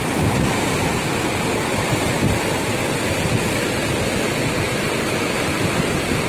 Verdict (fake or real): real